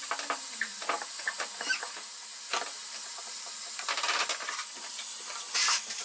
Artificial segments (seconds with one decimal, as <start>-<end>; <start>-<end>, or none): 0.7-1.3